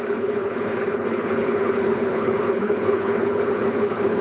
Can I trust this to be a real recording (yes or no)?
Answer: no